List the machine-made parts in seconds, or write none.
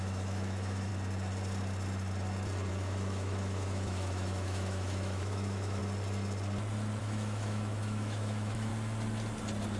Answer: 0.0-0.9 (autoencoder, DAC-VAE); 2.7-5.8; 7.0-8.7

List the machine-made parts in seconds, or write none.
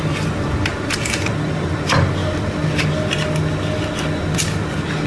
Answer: none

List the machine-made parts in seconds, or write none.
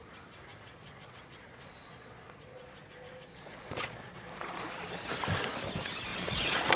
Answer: 0.5-4.6 (vocoder, Vocos); 6.1-6.8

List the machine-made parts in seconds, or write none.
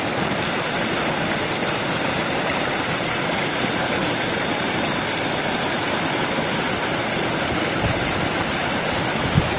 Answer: 1.6-5.1 (vocoder, BigVGAN v2)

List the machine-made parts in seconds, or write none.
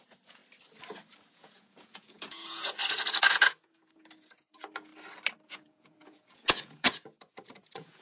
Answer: 0.0-0.4 (vocoder, Vocos); 1.3-2.8; 3.3-4.9; 5.5-8.0